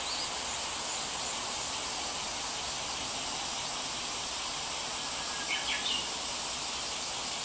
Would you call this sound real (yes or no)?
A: yes